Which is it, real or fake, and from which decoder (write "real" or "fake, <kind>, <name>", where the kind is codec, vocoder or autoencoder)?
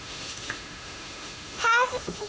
fake, autoencoder, DAC-VAE